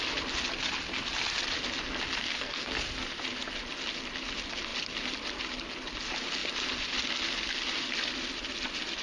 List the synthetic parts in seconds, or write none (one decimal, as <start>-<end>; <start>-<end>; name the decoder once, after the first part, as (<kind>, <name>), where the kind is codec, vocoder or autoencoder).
2.2-2.9 (codec, SNAC)